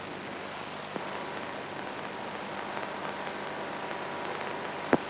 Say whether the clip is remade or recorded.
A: recorded